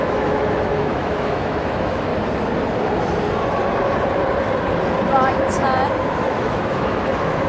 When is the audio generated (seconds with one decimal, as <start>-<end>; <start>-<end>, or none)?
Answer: 0.0-2.1; 6.2-7.5